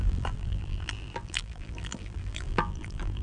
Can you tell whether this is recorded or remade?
remade